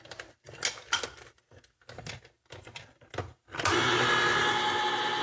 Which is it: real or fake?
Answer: real